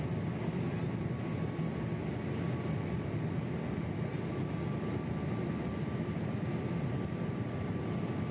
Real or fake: real